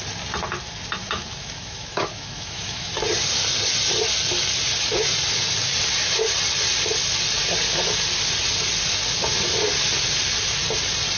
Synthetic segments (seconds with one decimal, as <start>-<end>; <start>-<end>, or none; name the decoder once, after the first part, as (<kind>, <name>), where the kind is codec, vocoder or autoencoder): 1.0-2.9 (autoencoder, DAC-VAE)